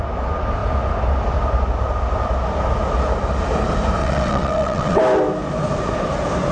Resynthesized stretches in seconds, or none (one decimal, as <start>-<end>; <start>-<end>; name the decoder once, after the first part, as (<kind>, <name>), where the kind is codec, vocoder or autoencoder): 4.0-5.0 (vocoder, WaveNeXt)